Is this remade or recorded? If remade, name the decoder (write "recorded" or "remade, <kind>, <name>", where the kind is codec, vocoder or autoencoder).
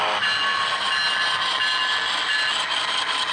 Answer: recorded